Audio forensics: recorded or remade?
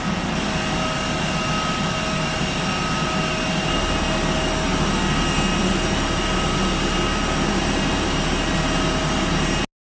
recorded